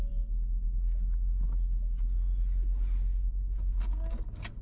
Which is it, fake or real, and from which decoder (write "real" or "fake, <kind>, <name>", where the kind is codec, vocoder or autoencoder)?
real